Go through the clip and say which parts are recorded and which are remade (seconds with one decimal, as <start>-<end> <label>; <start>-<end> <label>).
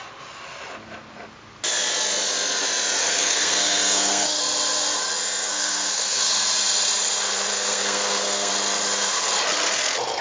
0.0-3.0 recorded; 3.0-4.4 remade; 4.4-5.5 recorded; 5.5-6.3 remade; 6.3-7.5 recorded; 7.5-8.5 remade; 8.5-10.2 recorded